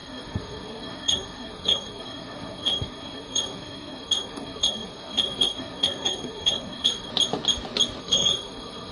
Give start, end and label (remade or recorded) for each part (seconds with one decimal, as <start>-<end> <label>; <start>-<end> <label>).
0.0-7.1 remade; 7.1-8.0 recorded; 8.0-8.9 remade